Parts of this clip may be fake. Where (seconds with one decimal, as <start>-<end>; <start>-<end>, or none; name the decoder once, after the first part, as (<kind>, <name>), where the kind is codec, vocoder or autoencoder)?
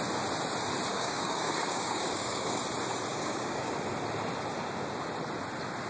0.9-2.6 (codec, DAC); 3.1-3.7